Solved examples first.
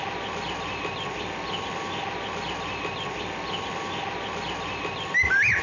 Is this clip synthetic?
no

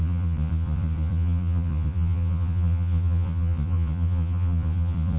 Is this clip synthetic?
yes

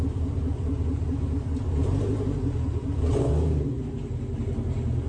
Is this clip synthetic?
no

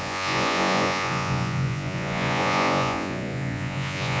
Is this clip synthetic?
yes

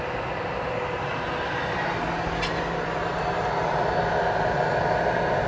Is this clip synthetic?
no